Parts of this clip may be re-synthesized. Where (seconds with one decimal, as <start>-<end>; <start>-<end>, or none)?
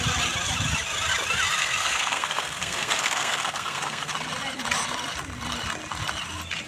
1.6-4.1